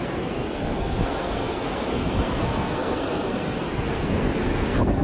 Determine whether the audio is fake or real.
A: fake